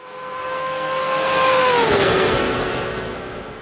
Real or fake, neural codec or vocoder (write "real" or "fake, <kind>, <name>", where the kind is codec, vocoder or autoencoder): fake, codec, SNAC